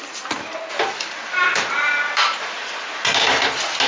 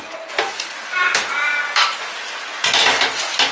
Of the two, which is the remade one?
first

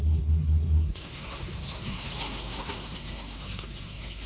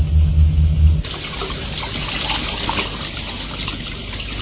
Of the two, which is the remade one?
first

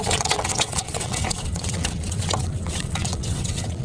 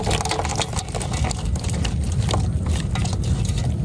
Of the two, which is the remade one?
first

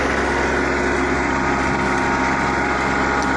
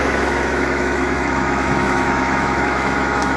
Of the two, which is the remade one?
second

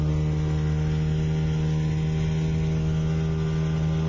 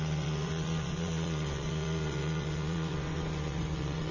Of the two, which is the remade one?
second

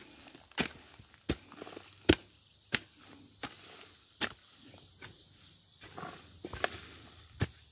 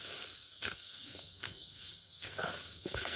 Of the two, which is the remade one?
second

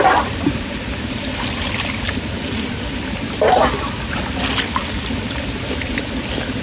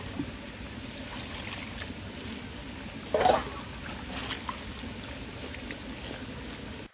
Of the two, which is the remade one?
first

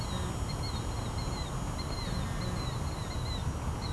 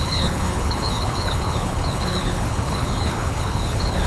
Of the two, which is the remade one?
second